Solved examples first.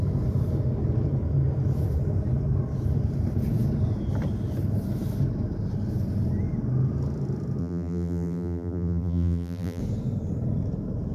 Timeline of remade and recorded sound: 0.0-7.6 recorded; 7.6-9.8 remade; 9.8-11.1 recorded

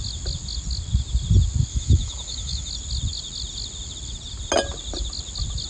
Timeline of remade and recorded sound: 0.0-1.7 recorded; 1.7-2.7 remade; 2.7-5.7 recorded

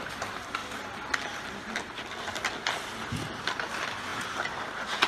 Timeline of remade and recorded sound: 0.0-5.1 recorded

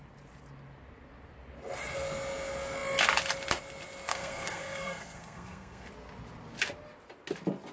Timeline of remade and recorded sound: 0.0-4.1 recorded; 4.1-5.9 remade; 5.9-7.7 recorded

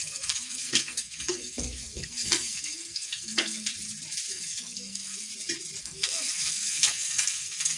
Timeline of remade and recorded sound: 0.0-3.7 remade; 3.7-4.3 recorded; 4.3-5.3 remade; 5.3-5.8 recorded; 5.8-7.8 remade

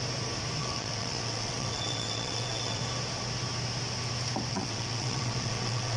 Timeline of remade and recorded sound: 0.0-0.6 recorded; 0.6-2.8 remade; 2.8-4.5 recorded; 4.5-6.0 remade

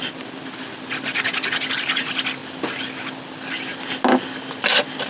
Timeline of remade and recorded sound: 0.0-5.1 recorded

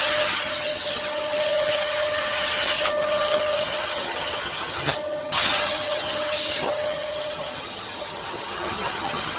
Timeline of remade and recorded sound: 0.0-9.4 remade